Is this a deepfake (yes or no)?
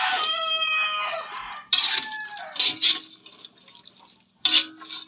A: no